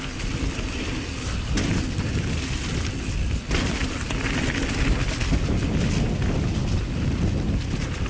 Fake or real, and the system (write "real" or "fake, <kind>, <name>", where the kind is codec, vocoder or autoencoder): real